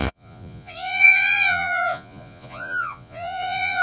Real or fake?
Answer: fake